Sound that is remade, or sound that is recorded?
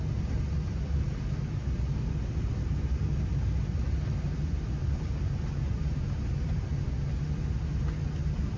recorded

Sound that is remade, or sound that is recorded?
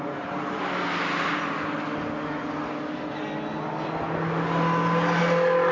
recorded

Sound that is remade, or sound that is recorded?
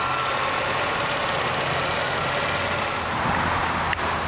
recorded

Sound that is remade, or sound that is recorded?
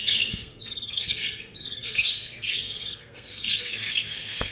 remade